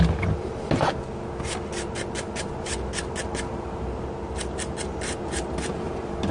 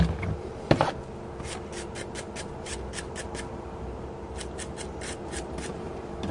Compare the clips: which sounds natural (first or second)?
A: first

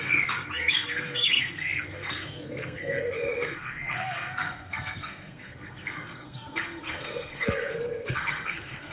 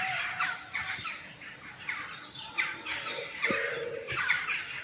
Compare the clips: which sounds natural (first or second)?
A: second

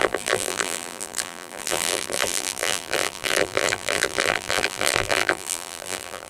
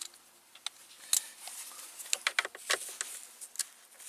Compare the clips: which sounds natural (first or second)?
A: second